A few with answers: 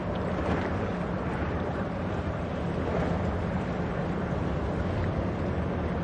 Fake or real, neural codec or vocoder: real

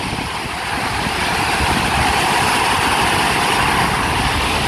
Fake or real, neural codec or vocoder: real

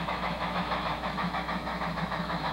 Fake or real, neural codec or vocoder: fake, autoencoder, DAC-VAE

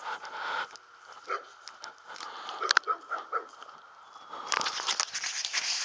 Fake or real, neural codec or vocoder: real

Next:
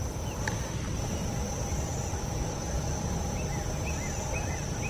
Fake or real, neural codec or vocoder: real